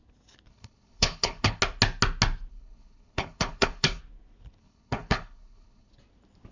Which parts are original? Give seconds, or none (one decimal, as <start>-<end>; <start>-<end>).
0.0-0.5; 1.6-2.5; 4.0-4.6; 5.9-6.5